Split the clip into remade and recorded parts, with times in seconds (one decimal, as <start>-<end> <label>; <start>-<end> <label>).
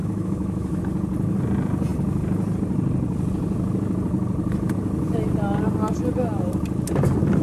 0.0-0.8 remade; 0.8-7.4 recorded